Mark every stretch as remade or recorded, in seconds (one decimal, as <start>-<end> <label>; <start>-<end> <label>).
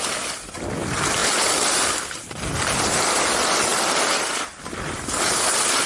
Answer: 0.0-5.9 recorded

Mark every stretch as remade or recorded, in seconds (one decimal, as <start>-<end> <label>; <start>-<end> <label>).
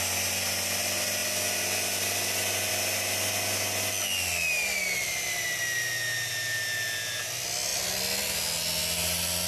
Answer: 0.0-9.5 recorded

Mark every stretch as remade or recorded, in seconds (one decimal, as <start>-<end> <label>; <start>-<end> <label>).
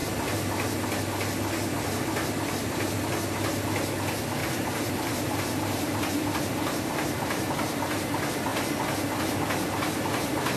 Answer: 0.0-4.4 recorded; 4.4-7.5 remade; 7.5-10.6 recorded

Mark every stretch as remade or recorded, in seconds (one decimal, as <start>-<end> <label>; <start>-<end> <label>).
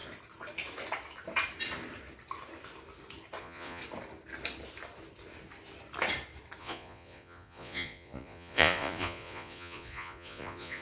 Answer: 0.0-3.4 recorded; 3.4-3.8 remade; 3.8-6.6 recorded; 6.6-10.8 remade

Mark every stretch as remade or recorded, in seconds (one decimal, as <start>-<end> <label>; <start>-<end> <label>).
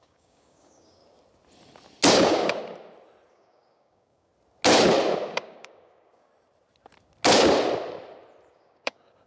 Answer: 0.0-1.0 remade; 1.0-2.1 recorded; 2.1-2.6 remade; 2.6-3.3 recorded; 3.3-4.3 remade; 4.3-5.3 recorded; 5.3-6.3 remade; 6.3-8.5 recorded; 8.5-9.3 remade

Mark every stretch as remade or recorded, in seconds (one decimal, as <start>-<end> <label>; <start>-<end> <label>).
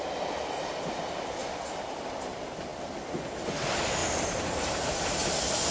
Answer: 0.0-4.0 recorded; 4.0-5.3 remade; 5.3-5.7 recorded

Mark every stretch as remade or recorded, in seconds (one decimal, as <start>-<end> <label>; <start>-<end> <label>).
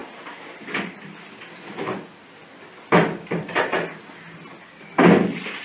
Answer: 0.0-1.4 remade; 1.4-2.4 recorded; 2.4-4.0 remade; 4.0-5.6 recorded